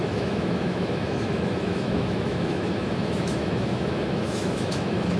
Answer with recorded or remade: remade